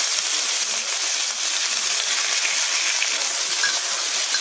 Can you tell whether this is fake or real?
real